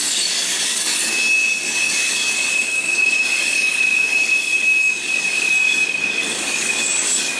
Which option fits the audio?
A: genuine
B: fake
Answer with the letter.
B